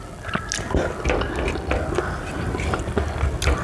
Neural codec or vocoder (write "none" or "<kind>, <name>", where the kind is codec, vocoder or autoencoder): none